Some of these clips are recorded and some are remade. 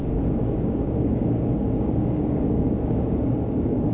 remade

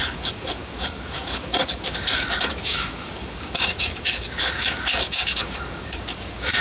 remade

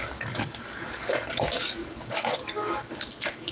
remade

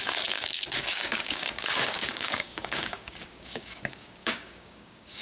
remade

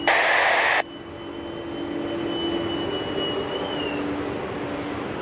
recorded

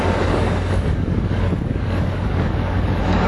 remade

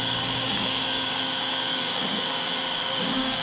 remade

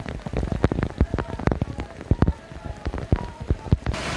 recorded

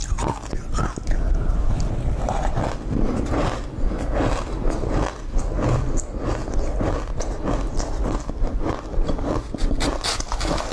recorded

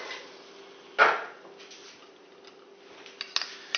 recorded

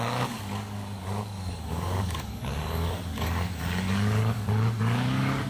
remade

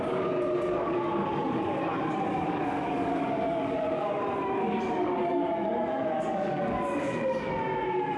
remade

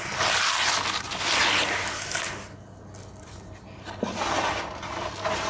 recorded